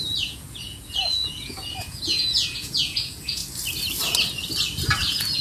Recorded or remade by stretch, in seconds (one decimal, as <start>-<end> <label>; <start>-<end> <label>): 0.0-3.4 remade; 3.4-4.9 recorded; 4.9-5.4 remade